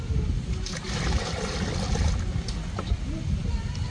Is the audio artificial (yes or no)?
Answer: no